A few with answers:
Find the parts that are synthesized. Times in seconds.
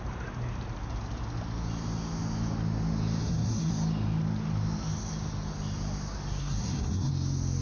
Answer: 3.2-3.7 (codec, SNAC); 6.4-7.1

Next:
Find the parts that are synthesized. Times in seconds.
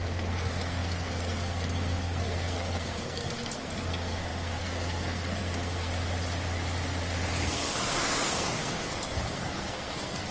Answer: 0.0-5.9 (codec, SNAC); 7.4-10.3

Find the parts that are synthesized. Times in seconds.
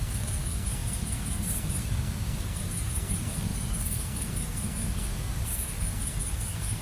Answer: 0.0-6.8 (codec, SNAC)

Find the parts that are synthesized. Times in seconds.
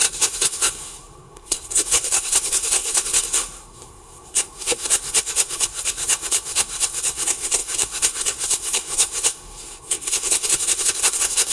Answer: 0.0-11.5 (codec, SNAC)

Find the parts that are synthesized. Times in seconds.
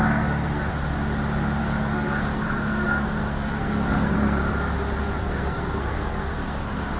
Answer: 0.0-0.7 (codec, SNAC); 1.6-4.4; 5.2-7.0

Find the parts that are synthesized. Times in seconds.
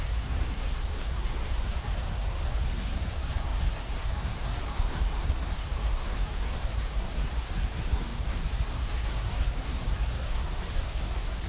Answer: 0.0-11.5 (codec, SNAC)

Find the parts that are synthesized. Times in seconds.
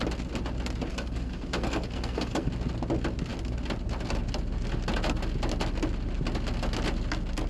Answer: 0.9-2.5 (codec, SNAC)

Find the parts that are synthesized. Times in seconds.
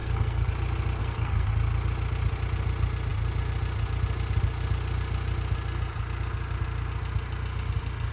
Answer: 0.0-0.5 (codec, SNAC); 1.0-1.5